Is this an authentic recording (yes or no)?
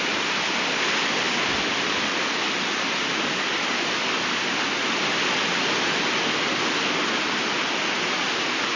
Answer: yes